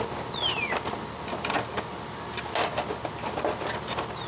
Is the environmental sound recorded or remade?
recorded